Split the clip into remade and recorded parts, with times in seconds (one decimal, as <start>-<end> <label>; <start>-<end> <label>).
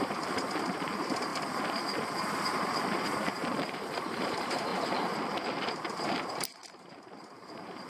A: 0.0-1.3 remade; 1.3-2.2 recorded; 2.2-4.7 remade; 4.7-5.6 recorded; 5.6-7.9 remade